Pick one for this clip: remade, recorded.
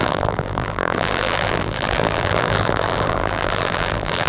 remade